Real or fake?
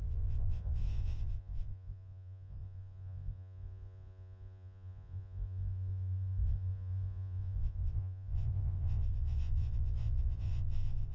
fake